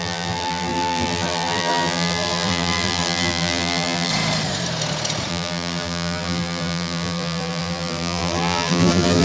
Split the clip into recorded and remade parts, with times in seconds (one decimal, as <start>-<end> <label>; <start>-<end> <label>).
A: 0.0-4.1 remade; 4.1-5.3 recorded; 5.3-9.2 remade